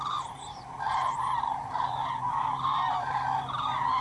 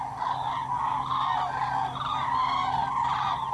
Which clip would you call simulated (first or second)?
first